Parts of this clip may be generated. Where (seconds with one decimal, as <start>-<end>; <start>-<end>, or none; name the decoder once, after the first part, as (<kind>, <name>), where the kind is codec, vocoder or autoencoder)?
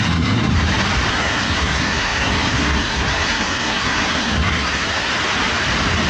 0.0-0.5 (codec, SNAC); 1.1-5.1